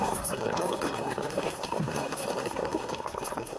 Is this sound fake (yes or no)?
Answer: yes